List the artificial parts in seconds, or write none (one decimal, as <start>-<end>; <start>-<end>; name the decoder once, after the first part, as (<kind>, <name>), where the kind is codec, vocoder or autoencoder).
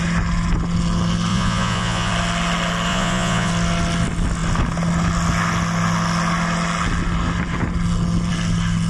1.3-2.1 (vocoder, Vocos); 2.9-3.5